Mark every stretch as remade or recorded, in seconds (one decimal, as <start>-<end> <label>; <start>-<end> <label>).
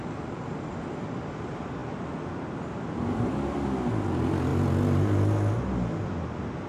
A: 0.0-6.7 recorded